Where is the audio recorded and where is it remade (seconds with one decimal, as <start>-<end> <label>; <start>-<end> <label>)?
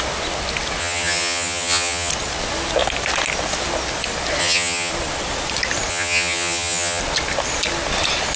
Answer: 0.0-0.8 recorded; 0.8-2.1 remade; 2.1-4.4 recorded; 4.4-4.9 remade; 4.9-5.9 recorded; 5.9-7.0 remade; 7.0-8.4 recorded